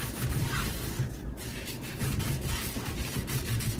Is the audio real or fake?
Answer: real